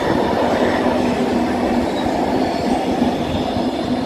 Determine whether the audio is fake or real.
real